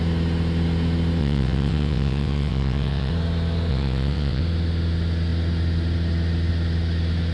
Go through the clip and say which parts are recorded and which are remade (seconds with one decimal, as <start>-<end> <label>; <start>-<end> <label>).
0.0-1.2 recorded; 1.2-3.1 remade; 3.1-3.7 recorded; 3.7-4.4 remade; 4.4-7.3 recorded

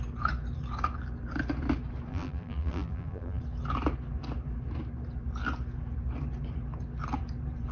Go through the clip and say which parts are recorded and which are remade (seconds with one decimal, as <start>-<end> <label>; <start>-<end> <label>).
0.0-2.1 recorded; 2.1-3.4 remade; 3.4-7.7 recorded

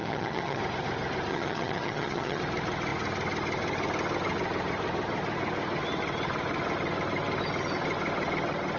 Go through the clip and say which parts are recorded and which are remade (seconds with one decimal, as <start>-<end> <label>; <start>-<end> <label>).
0.0-0.6 remade; 0.6-1.3 recorded; 1.3-2.4 remade; 2.4-8.8 recorded

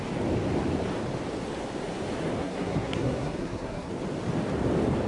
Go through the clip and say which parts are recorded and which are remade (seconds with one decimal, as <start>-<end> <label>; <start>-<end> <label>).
0.0-2.4 recorded; 2.4-3.9 remade; 3.9-5.1 recorded

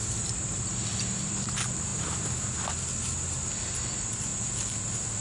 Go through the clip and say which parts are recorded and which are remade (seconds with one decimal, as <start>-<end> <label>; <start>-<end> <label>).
0.0-5.2 recorded